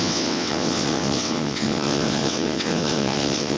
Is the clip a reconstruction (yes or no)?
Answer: yes